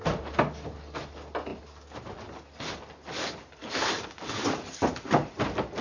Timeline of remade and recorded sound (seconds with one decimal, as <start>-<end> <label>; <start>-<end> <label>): 0.0-5.8 recorded